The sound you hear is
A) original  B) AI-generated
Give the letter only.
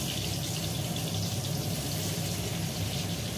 A